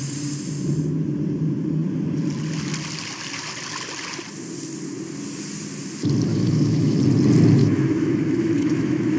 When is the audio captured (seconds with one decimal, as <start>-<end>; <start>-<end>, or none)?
0.0-6.3; 7.0-7.6